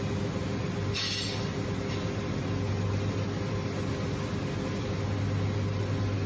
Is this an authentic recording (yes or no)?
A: yes